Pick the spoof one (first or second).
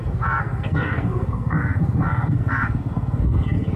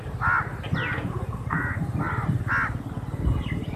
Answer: first